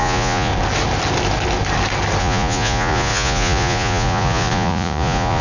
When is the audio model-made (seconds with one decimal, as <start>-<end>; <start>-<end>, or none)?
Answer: 0.0-0.5; 2.2-5.4